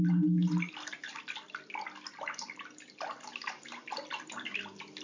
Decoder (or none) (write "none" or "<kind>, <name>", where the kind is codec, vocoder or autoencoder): none